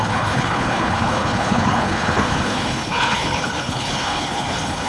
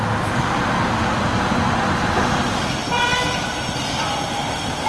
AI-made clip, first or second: first